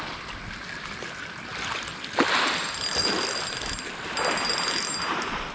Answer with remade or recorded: recorded